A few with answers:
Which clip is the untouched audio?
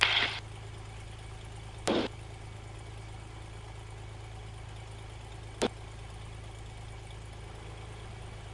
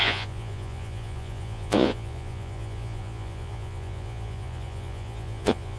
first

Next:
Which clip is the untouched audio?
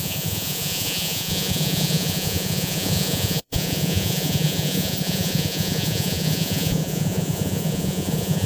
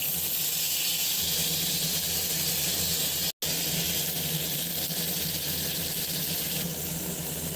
second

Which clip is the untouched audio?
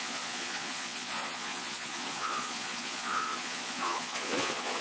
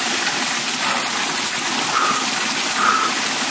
second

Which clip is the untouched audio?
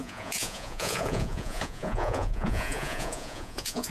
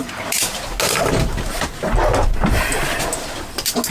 second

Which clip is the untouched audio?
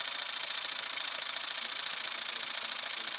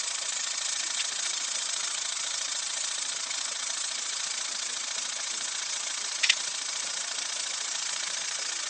first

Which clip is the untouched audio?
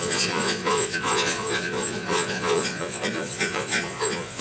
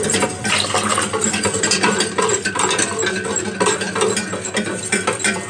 second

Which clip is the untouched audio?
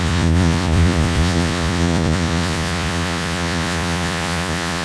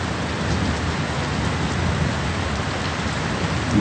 second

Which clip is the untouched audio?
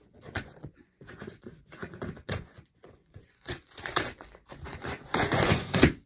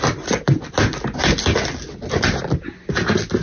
second